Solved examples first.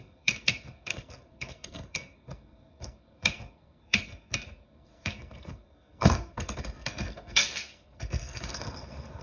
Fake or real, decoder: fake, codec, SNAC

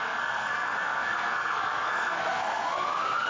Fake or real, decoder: fake, codec, SNAC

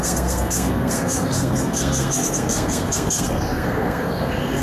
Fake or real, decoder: fake, codec, SNAC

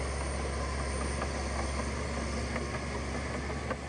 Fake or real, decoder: real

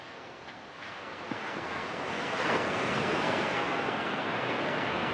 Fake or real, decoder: fake, codec, SNAC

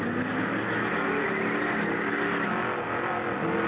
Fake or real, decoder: real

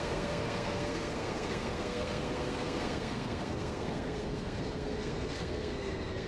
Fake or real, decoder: fake, codec, SNAC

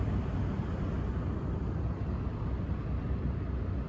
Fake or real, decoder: real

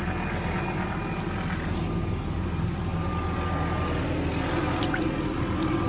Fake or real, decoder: real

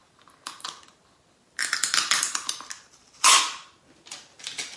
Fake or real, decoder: real